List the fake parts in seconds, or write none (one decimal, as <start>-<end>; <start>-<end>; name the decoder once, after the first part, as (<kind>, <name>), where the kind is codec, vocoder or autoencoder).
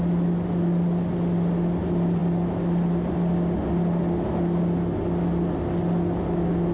none